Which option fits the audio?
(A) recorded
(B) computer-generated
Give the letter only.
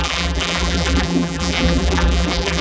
B